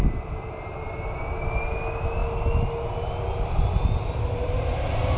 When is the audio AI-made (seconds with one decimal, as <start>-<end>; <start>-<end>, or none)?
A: none